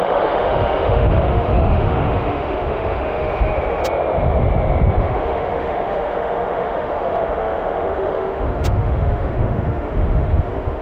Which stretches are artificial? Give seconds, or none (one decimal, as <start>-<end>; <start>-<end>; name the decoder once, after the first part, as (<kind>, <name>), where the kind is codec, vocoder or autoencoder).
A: 0.0-3.8 (autoencoder, DAC-VAE); 5.0-10.8